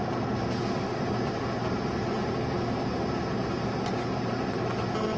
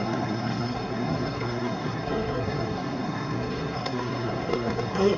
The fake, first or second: second